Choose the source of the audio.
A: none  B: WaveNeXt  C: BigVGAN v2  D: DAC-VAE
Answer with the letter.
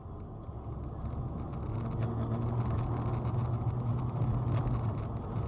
A